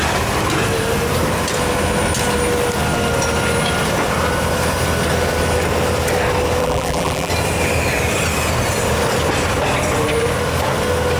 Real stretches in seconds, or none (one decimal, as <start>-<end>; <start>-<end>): 0.0-6.6; 7.3-11.2

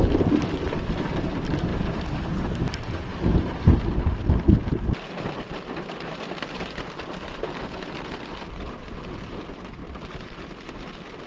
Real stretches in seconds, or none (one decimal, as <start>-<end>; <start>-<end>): 0.0-9.8

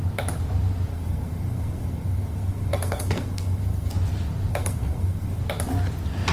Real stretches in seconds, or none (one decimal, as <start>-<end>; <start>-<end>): 0.0-0.9; 3.9-4.5; 5.4-6.3

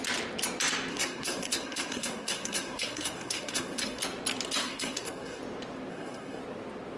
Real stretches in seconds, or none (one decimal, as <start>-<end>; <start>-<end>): 0.0-0.9; 4.0-4.6; 5.4-5.9; 6.4-7.0